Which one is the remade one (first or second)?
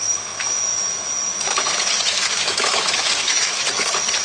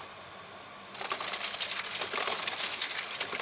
first